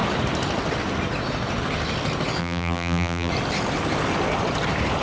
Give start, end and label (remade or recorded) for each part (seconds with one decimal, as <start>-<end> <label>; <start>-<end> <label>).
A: 0.0-2.4 recorded; 2.4-3.3 remade; 3.3-5.0 recorded